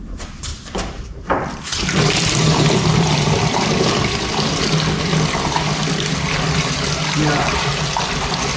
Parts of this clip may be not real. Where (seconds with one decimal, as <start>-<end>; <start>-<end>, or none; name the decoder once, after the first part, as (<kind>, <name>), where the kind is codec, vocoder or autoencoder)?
0.5-4.0 (vocoder, BigVGAN v2)